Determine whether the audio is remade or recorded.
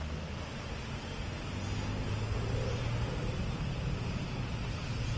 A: recorded